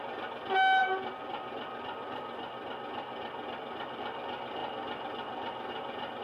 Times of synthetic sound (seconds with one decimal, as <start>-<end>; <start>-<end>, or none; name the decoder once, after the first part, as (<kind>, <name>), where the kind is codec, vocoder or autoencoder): 0.8-4.0 (vocoder, BigVGAN v2); 4.6-6.2